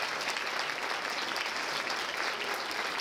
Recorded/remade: recorded